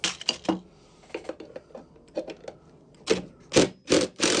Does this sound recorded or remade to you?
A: recorded